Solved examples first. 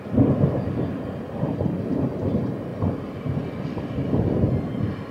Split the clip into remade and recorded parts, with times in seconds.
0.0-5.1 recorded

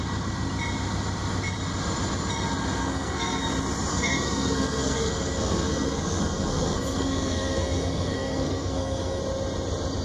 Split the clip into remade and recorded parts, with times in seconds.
0.0-2.8 recorded; 2.8-3.4 remade; 3.4-3.9 recorded; 3.9-9.2 remade; 9.2-10.0 recorded

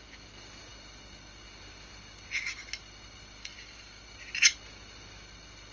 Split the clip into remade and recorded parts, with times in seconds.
0.0-3.4 recorded; 3.4-4.0 remade; 4.0-5.7 recorded

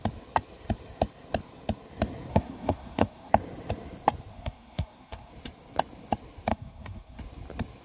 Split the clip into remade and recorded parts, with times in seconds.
0.0-2.3 recorded; 2.3-3.3 remade; 3.3-4.3 recorded; 4.3-5.3 remade; 5.3-6.5 recorded; 6.5-7.2 remade; 7.2-7.8 recorded